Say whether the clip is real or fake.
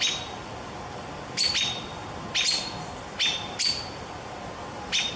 real